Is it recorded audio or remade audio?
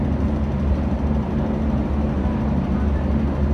recorded